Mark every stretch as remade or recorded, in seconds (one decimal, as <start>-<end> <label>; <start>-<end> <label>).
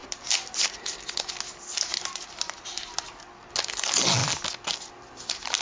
0.0-1.3 remade; 1.3-1.9 recorded; 1.9-3.2 remade; 3.2-5.6 recorded